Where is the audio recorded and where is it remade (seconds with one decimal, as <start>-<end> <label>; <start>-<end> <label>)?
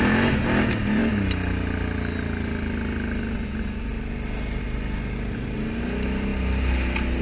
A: 0.0-7.2 recorded